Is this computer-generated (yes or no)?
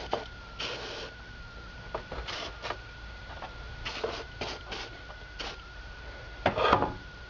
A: no